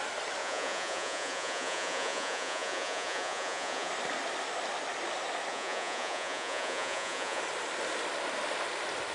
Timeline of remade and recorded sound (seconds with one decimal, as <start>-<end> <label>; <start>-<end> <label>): 0.0-0.4 recorded; 0.4-3.9 remade; 3.9-5.5 recorded; 5.5-7.4 remade; 7.4-9.1 recorded